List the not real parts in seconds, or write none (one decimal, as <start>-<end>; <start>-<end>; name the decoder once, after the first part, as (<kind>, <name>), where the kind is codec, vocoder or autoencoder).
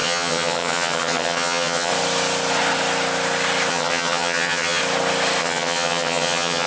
0.0-1.9 (vocoder, HiFi-GAN); 3.7-4.8; 5.4-6.7